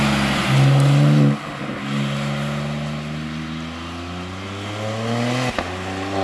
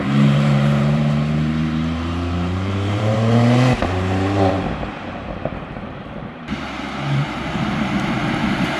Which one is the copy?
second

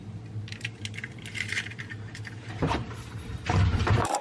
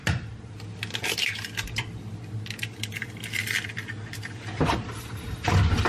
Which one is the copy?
first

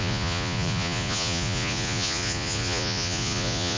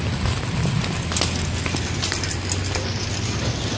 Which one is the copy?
first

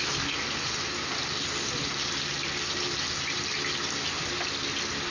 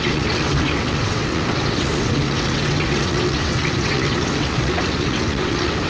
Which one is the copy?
second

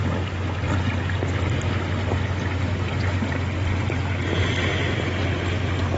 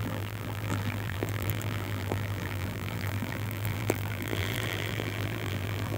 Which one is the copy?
second